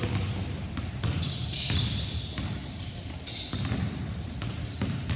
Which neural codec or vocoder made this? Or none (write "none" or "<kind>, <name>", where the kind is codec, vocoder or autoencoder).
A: none